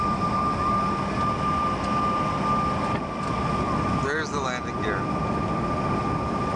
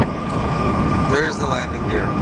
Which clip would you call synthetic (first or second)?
second